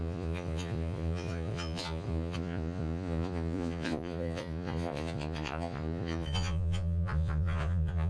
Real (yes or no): no